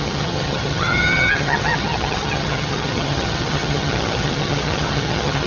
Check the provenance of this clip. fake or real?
fake